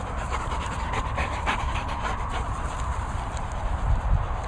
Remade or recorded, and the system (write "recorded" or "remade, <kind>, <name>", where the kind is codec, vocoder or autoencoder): recorded